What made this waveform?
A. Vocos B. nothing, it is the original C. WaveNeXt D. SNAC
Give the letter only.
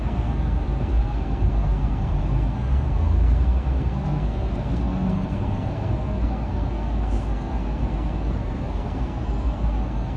D